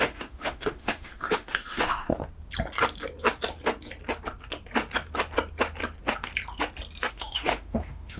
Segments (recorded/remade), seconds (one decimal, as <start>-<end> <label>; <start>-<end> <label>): 0.0-2.2 remade; 2.2-7.1 recorded; 7.1-8.2 remade